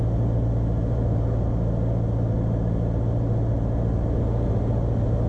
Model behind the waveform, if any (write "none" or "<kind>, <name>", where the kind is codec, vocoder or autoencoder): none